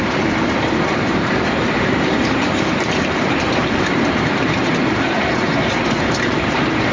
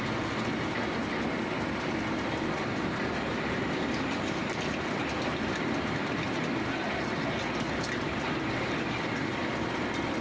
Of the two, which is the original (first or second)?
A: second